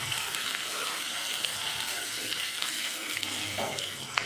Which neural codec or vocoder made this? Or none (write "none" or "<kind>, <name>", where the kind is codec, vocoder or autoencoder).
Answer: codec, SNAC